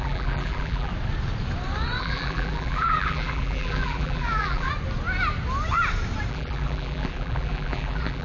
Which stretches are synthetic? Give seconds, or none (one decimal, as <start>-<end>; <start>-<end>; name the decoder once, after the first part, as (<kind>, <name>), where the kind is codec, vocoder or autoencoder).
0.0-0.9 (vocoder, BigVGAN v2); 2.0-4.7; 6.3-8.2